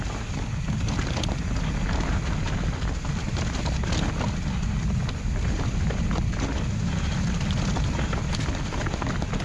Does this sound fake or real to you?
real